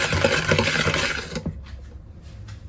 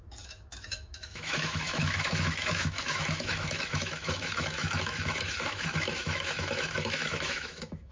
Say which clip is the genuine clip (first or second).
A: first